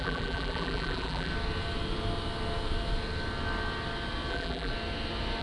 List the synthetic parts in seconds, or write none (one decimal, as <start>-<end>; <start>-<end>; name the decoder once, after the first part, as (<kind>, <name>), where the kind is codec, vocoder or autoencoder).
0.0-1.3 (vocoder, BigVGAN v2); 4.3-4.7